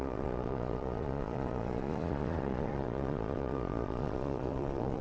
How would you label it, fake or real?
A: fake